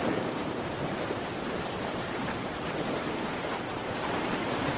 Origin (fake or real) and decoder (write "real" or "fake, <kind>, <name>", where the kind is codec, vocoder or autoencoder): fake, vocoder, BigVGAN v2